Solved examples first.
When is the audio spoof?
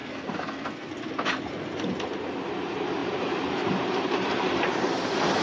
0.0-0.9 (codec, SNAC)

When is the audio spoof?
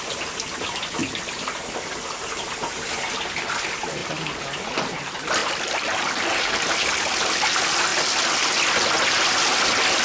1.0-1.8 (vocoder, BigVGAN v2); 5.4-6.3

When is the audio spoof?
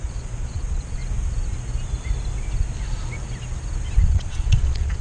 0.0-1.0 (vocoder, Vocos); 4.0-5.0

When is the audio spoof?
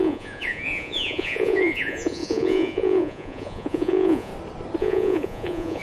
0.0-4.3 (vocoder, Vocos); 4.8-5.8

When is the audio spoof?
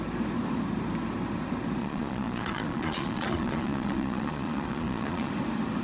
1.8-5.3 (vocoder, Vocos)